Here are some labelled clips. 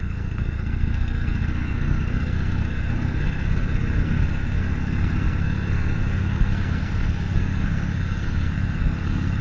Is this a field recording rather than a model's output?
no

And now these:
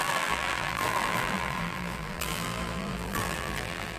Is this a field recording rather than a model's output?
no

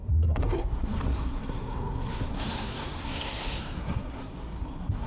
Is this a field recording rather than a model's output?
no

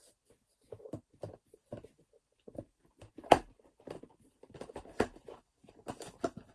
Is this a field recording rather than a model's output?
yes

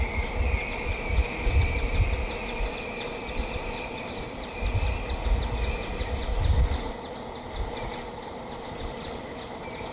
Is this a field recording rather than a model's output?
yes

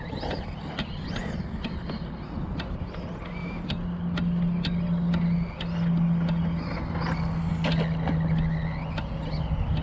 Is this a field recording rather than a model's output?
yes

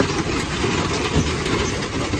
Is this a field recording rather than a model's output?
yes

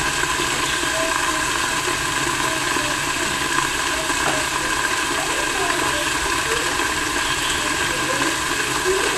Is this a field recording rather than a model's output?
yes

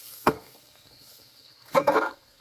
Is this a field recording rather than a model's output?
no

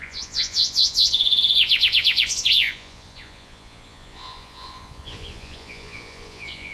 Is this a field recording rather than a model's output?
no